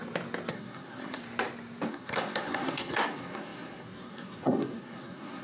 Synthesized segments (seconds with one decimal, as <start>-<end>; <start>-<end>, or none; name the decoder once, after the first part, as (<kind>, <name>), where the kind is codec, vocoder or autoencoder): 0.5-1.2 (codec, SNAC); 1.9-5.4